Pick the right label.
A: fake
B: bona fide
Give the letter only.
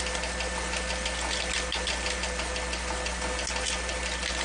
B